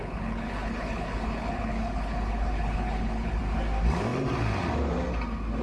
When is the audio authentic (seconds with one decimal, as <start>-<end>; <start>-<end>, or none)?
3.4-5.6

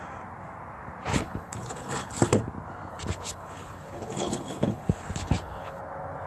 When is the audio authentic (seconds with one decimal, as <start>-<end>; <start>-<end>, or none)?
0.0-1.1; 2.4-2.9; 5.8-6.3

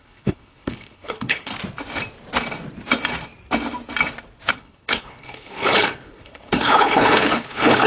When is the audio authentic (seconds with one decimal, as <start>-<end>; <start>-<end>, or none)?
1.5-4.5